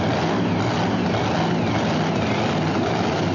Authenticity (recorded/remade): recorded